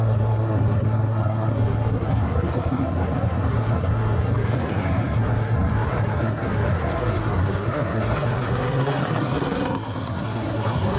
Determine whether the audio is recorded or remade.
remade